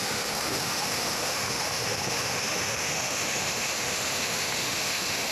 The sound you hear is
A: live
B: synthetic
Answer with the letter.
B